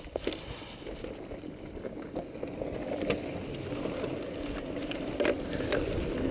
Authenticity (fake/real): real